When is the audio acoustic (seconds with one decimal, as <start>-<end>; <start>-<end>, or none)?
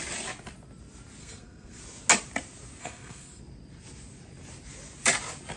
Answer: 0.0-1.2; 1.8-2.8; 3.4-5.6